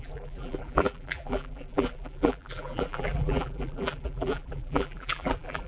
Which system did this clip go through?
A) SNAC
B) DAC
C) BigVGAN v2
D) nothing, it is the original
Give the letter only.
C